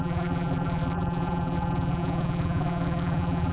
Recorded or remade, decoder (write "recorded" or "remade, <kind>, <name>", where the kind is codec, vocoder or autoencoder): remade, vocoder, BigVGAN v2